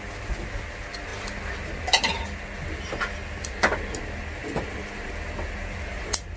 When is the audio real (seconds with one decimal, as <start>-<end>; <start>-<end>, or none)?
0.0-4.4; 5.1-5.9